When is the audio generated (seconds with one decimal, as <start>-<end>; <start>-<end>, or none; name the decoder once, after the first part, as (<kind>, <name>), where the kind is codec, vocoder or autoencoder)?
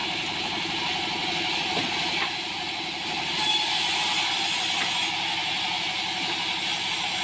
none